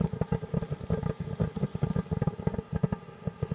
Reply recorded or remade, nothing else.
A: recorded